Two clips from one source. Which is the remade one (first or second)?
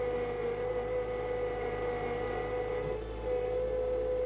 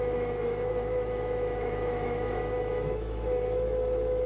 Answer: second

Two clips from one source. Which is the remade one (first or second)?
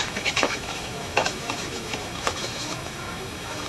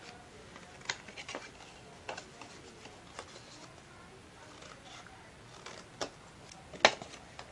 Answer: first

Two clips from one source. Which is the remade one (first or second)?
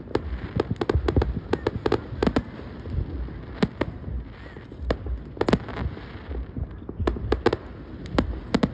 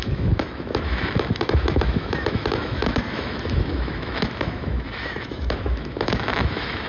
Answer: second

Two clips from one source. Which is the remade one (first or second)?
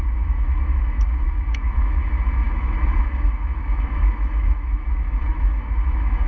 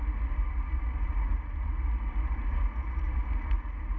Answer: first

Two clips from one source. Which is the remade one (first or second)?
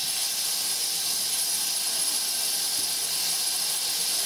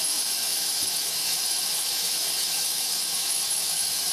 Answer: second